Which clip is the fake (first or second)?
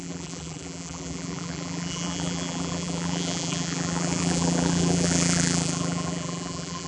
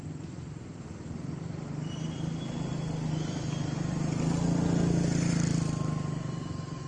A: first